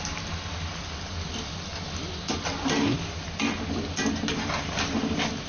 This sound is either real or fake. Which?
real